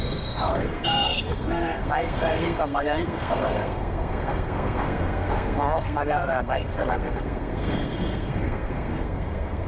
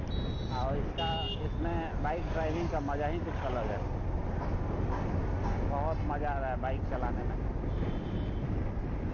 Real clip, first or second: second